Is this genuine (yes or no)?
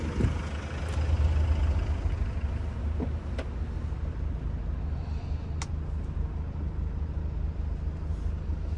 yes